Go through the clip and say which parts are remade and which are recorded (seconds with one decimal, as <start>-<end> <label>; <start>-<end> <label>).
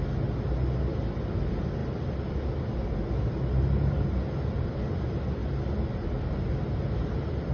0.0-7.5 recorded